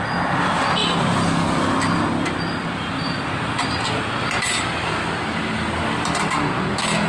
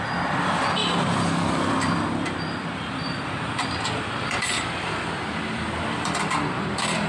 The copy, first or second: second